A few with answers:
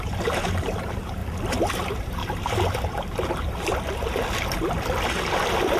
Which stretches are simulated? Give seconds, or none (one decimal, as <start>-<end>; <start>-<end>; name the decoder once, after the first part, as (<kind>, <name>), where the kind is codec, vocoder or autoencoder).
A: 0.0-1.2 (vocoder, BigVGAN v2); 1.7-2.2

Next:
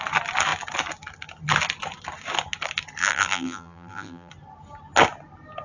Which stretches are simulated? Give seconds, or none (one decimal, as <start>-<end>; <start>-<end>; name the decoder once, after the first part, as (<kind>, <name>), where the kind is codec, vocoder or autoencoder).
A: 3.0-4.3 (vocoder, BigVGAN v2)

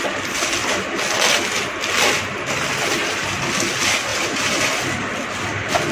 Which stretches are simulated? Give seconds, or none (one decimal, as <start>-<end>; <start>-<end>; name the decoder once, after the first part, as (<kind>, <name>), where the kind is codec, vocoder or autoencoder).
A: 4.1-4.6 (vocoder, BigVGAN v2)